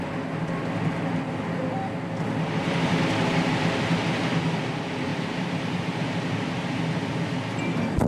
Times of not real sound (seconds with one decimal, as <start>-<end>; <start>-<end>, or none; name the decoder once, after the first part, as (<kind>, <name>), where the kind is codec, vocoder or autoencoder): 5.1-6.1 (vocoder, BigVGAN v2)